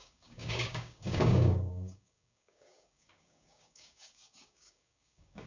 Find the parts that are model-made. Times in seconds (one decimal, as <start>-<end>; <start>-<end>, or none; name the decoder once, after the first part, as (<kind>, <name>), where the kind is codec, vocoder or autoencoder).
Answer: 0.0-5.5 (codec, DAC)

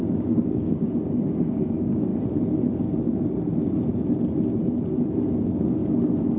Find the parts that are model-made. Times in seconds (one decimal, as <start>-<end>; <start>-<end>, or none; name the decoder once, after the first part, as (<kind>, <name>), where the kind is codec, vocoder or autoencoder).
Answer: 0.0-2.1 (codec, DAC); 5.3-5.8

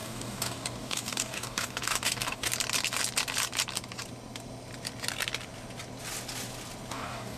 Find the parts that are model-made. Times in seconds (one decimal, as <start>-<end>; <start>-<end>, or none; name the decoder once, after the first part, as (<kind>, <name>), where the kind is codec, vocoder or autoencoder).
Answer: 0.0-2.5 (codec, DAC); 6.9-7.4

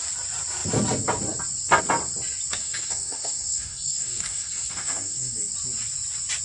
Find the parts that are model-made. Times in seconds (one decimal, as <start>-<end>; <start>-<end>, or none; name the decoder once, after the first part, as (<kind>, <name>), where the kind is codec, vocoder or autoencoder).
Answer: 2.6-5.5 (codec, DAC)

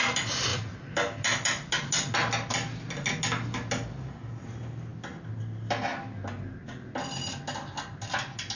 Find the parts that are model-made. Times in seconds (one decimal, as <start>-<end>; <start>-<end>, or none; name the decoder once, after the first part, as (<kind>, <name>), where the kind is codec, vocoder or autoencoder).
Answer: none

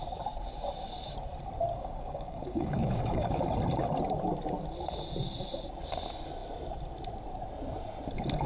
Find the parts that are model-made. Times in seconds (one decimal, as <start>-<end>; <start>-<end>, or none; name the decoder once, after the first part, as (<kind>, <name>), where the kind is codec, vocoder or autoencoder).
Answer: 1.7-3.4 (codec, DAC)

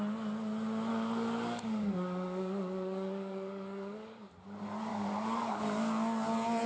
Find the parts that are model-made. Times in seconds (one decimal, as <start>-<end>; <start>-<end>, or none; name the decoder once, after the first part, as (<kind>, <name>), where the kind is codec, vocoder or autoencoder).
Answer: 0.9-4.3 (codec, DAC); 4.9-5.6